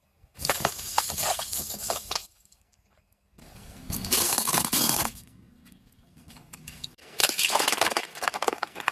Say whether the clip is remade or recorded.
remade